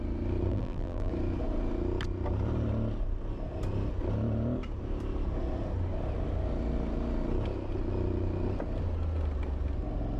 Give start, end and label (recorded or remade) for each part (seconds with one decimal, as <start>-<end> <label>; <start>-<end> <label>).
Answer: 0.0-0.5 recorded; 0.5-1.1 remade; 1.1-10.2 recorded